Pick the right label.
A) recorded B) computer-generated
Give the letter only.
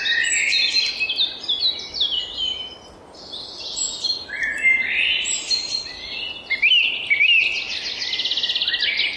A